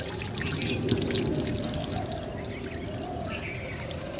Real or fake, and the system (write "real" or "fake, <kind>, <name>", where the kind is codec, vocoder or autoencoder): real